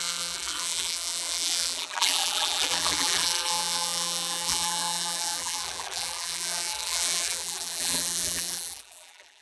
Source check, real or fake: fake